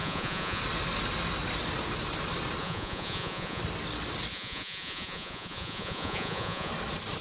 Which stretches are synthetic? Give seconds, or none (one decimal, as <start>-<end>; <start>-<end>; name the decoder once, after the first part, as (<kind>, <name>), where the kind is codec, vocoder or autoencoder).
0.0-0.6 (vocoder, Vocos); 2.6-3.6; 4.3-6.7